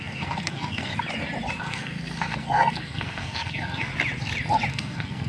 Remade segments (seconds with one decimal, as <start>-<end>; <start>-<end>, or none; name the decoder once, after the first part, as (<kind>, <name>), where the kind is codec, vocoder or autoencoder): 0.0-0.9 (codec, SNAC); 1.6-3.9; 4.7-5.3